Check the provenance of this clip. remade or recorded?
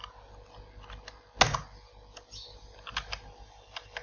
recorded